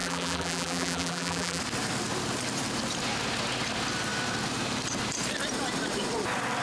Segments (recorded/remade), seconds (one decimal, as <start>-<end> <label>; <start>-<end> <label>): 0.0-1.6 remade; 1.6-6.6 recorded